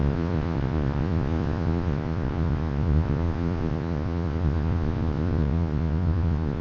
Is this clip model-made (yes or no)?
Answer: yes